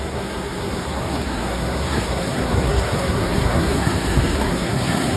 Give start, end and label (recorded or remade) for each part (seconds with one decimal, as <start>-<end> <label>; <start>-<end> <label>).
0.0-5.2 remade